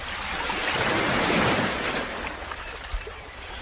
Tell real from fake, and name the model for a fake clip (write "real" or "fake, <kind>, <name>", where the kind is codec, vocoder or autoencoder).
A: real